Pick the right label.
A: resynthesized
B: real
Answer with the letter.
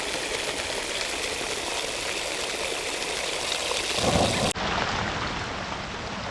B